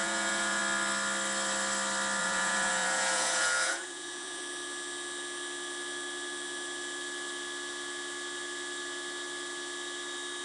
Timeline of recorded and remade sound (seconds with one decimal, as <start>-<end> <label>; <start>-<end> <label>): 0.0-0.6 remade; 0.6-2.2 recorded; 2.2-4.4 remade; 4.4-10.4 recorded